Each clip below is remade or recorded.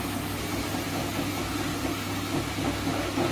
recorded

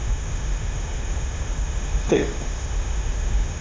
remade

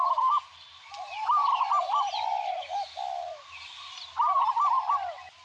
recorded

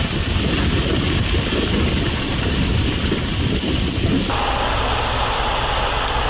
recorded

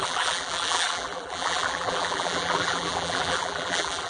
remade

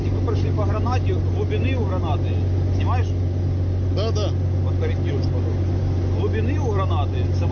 recorded